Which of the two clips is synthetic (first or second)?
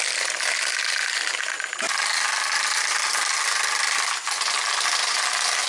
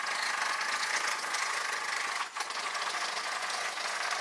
second